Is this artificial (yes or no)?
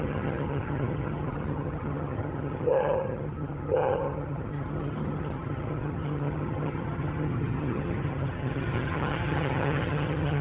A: yes